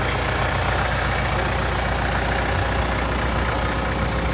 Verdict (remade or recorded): recorded